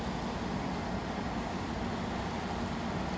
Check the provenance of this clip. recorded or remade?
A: recorded